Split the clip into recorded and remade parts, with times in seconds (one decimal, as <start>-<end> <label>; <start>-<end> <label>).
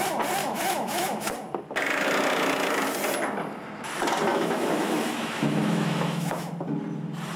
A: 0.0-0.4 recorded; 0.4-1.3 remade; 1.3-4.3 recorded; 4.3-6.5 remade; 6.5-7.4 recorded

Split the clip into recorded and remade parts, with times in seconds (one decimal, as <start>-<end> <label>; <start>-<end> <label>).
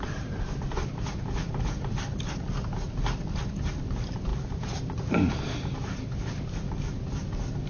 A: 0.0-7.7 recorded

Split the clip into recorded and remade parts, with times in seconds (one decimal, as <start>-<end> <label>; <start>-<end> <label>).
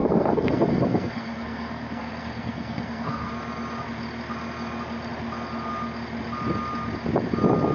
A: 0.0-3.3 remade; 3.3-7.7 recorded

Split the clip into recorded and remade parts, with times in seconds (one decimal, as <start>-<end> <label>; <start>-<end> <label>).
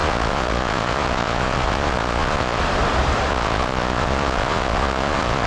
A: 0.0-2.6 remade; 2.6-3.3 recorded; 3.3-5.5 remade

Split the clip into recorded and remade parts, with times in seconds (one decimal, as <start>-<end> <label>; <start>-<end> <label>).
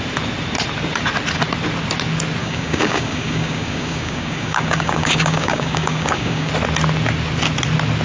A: 0.0-2.4 recorded; 2.4-6.5 remade; 6.5-8.0 recorded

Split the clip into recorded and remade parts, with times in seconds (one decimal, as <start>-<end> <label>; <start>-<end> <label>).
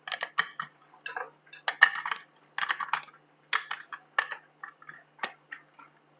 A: 0.0-6.2 recorded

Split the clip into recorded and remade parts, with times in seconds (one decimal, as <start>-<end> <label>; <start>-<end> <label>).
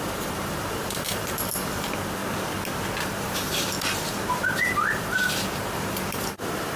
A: 0.0-2.2 remade; 2.2-3.0 recorded; 3.0-6.8 remade